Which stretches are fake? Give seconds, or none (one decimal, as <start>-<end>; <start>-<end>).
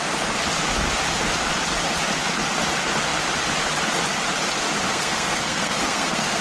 4.9-6.4